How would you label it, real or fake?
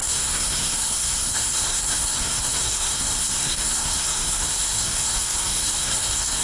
fake